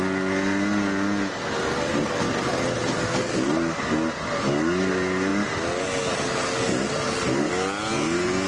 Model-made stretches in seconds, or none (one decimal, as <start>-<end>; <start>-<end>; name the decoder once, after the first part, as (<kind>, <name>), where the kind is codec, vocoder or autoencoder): none